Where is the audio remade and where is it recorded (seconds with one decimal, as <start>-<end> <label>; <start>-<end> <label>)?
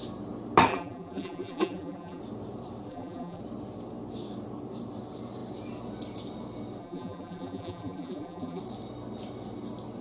0.0-0.7 recorded; 0.7-2.2 remade; 2.2-2.9 recorded; 2.9-3.4 remade; 3.4-6.8 recorded; 6.8-8.6 remade; 8.6-10.0 recorded